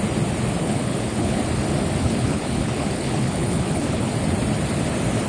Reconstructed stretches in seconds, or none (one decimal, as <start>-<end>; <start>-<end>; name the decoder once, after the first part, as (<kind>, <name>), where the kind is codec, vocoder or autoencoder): 0.6-1.4 (codec, HILCodec); 2.0-4.1